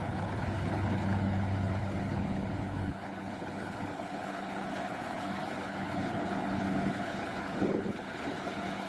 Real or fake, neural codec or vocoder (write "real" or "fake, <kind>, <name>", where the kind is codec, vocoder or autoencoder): fake, codec, HILCodec